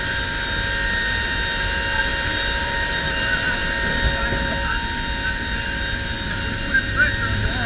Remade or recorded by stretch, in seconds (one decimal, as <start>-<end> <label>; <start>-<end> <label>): 0.0-2.1 recorded; 2.1-3.6 remade; 3.6-7.7 recorded